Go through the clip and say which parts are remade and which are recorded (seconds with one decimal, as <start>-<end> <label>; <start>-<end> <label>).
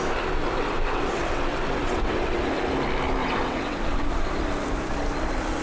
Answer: 0.0-0.4 recorded; 0.4-2.4 remade; 2.4-3.2 recorded; 3.2-4.3 remade; 4.3-5.6 recorded